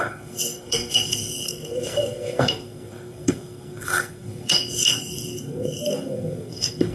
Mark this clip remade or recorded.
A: remade